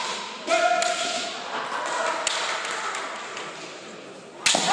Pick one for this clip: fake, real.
real